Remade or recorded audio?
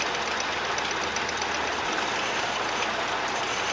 recorded